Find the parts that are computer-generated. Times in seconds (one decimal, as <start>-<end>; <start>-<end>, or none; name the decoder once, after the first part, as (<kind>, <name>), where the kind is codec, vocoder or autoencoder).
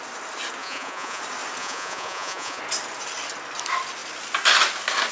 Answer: 0.6-1.2 (vocoder, Vocos); 1.6-2.6